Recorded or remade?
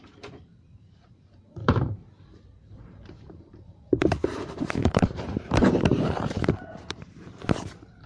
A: remade